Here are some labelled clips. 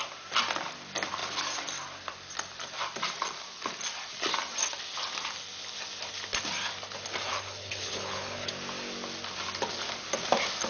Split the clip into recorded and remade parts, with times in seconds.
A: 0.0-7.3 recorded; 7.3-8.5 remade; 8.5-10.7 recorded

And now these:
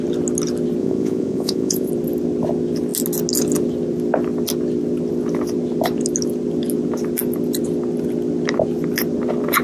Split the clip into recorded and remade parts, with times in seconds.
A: 0.0-0.8 recorded; 0.8-1.9 remade; 1.9-9.6 recorded

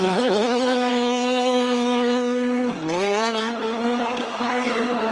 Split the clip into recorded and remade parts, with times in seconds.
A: 0.0-5.1 remade

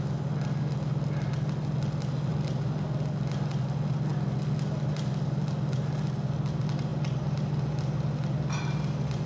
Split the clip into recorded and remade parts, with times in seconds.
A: 0.0-9.3 recorded

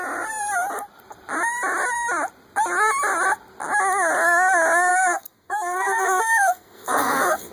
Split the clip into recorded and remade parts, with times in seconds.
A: 0.0-4.9 recorded; 4.9-7.5 remade